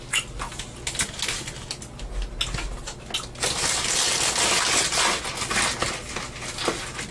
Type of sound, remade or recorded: recorded